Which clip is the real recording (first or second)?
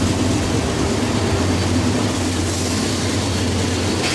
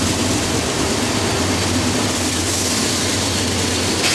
first